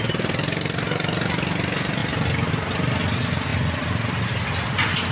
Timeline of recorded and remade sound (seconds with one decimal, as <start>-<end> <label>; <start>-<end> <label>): 0.0-5.1 recorded